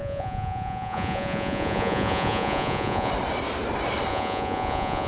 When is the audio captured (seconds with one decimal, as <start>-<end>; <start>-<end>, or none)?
3.1-4.1